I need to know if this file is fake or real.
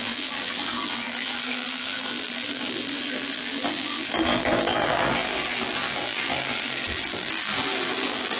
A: fake